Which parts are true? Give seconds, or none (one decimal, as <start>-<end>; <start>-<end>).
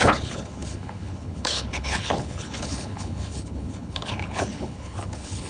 none